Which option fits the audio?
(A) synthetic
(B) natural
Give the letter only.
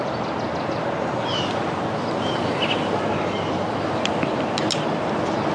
B